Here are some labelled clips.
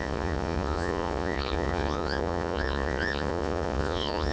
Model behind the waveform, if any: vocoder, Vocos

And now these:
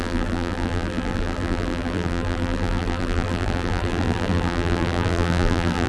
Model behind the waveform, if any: vocoder, BigVGAN v2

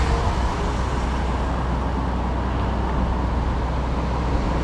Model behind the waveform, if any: none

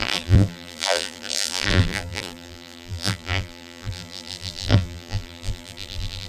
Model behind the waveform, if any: vocoder, BigVGAN v2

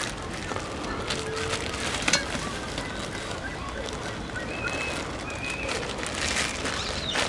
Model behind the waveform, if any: none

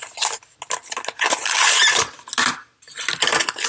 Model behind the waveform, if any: none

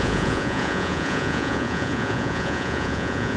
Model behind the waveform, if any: vocoder, Vocos